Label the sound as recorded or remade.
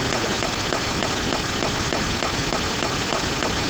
recorded